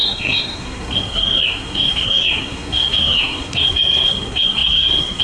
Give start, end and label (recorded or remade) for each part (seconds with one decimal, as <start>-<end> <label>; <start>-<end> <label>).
0.0-5.2 remade